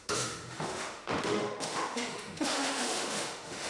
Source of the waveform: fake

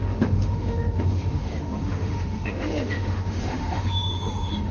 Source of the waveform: fake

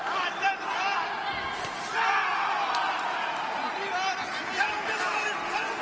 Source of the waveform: real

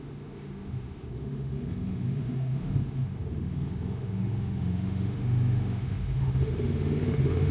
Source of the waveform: fake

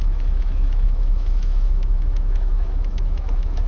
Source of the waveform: fake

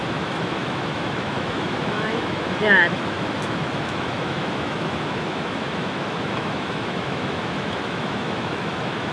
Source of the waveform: fake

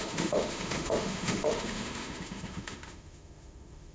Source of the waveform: fake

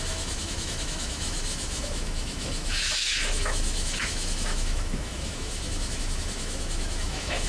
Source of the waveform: fake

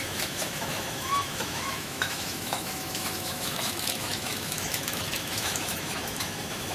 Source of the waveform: fake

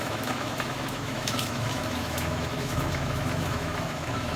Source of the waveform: fake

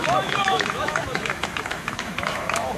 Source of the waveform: fake